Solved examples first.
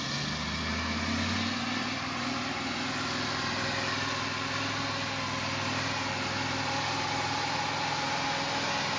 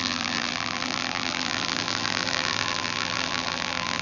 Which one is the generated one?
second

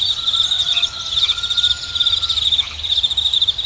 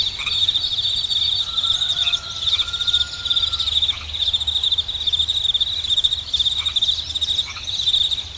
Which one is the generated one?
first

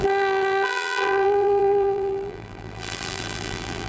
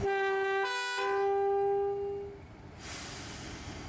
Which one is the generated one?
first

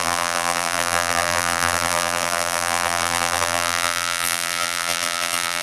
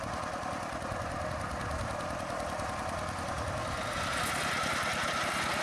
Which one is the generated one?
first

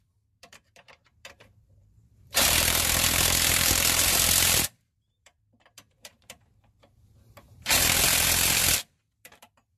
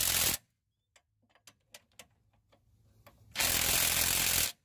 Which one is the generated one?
first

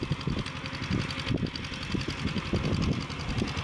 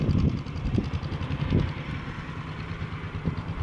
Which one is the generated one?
second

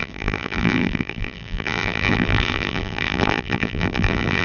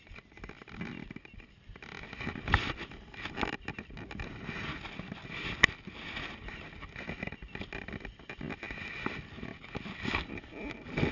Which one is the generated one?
first